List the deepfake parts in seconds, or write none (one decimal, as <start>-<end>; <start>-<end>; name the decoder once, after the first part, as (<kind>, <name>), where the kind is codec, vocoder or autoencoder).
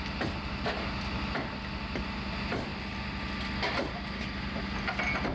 none